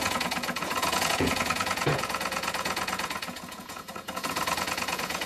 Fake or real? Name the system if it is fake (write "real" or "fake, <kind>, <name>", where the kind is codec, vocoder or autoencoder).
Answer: fake, vocoder, Vocos